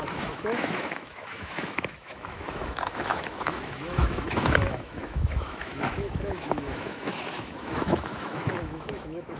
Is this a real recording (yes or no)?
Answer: no